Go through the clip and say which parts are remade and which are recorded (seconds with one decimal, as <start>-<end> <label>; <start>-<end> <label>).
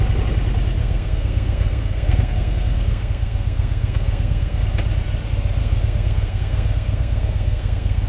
0.0-0.8 recorded; 0.8-4.6 remade; 4.6-5.6 recorded; 5.6-8.1 remade